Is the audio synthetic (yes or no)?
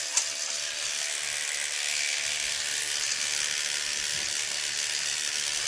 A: no